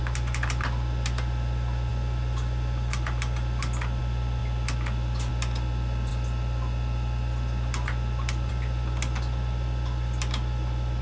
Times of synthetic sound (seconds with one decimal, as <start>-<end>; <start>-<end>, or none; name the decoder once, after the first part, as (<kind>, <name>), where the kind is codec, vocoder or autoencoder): none